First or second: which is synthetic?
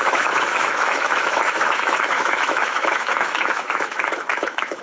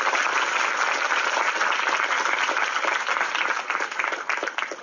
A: first